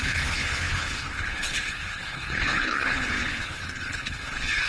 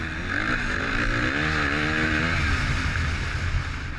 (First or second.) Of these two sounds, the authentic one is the second